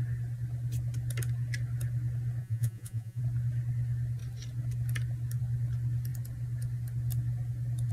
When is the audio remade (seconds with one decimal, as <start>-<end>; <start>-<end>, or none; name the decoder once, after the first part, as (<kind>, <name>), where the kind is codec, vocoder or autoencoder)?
2.4-3.2 (vocoder, Vocos)

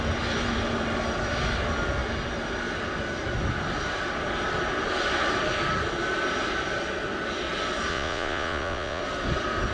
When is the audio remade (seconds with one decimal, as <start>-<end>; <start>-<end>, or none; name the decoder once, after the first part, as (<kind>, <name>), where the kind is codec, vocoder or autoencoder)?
7.9-9.0 (vocoder, Vocos)

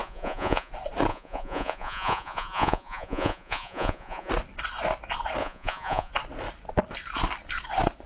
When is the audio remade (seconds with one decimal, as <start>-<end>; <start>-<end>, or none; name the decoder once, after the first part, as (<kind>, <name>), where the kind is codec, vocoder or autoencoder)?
0.0-0.7 (vocoder, Vocos); 1.1-4.3; 5.4-6.1

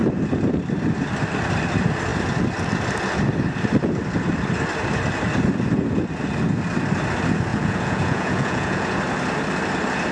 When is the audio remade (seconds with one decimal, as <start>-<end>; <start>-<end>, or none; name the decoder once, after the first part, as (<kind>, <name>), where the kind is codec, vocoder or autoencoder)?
7.5-9.0 (vocoder, Vocos)

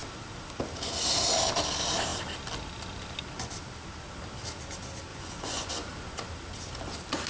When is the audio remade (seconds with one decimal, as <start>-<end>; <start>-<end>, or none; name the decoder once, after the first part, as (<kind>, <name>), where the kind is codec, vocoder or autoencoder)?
5.1-5.7 (vocoder, Vocos)

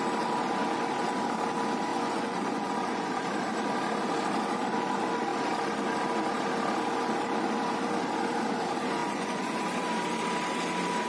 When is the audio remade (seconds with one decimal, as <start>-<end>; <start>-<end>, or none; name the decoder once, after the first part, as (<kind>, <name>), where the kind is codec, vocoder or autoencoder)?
1.9-3.1 (vocoder, Vocos); 9.0-9.6

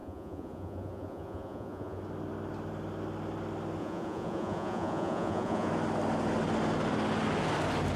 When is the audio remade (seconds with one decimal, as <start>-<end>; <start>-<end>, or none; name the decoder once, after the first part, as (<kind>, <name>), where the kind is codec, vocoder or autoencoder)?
0.0-2.0 (vocoder, Vocos); 3.8-5.7